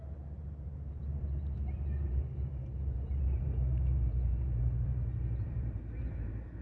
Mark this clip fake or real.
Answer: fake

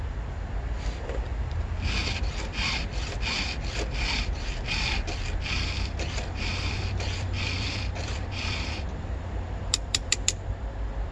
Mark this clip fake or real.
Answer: fake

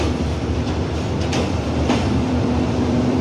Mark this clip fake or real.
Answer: fake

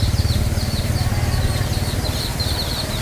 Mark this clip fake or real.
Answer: fake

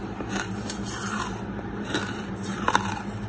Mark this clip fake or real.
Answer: fake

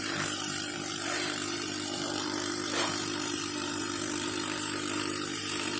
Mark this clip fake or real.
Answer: fake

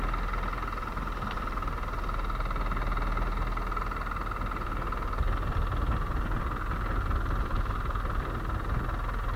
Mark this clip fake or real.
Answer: real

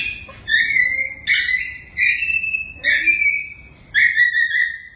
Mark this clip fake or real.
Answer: real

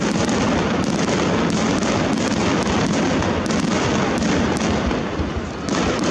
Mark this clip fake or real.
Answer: real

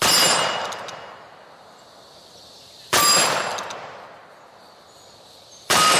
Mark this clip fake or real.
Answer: fake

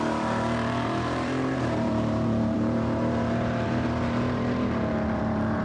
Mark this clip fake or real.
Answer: fake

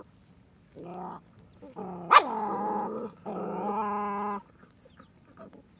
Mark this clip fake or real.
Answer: real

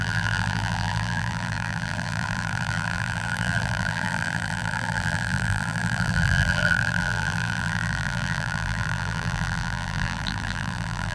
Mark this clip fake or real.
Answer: fake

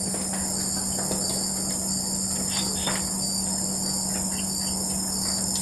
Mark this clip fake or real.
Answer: real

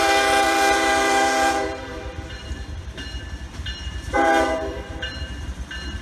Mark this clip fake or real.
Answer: fake